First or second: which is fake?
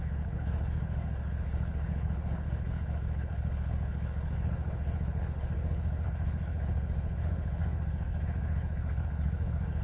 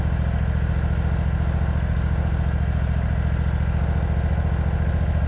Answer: first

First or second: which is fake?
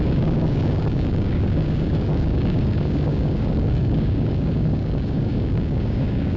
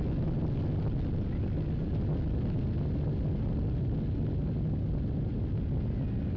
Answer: first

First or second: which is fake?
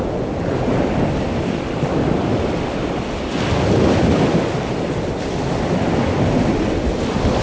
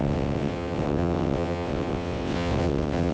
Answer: second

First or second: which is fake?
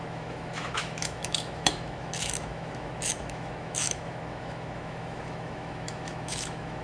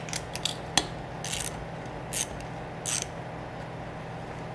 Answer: first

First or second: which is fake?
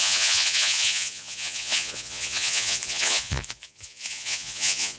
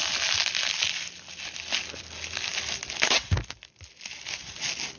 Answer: first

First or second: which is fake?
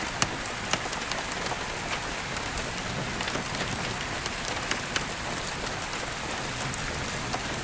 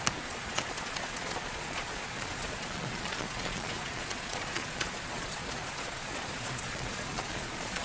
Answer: second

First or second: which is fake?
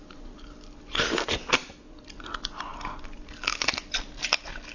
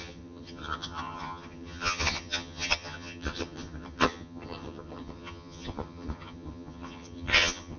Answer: second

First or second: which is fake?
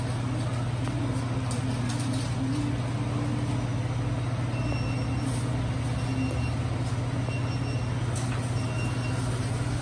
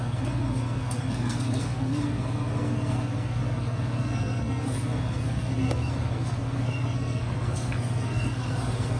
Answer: second